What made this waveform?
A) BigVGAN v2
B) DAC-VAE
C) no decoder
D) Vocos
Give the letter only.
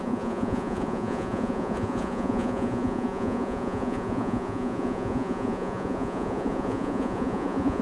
D